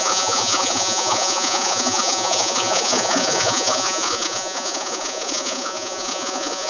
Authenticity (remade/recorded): remade